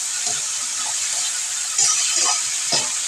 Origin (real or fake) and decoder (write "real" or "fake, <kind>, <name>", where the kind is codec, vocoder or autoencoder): real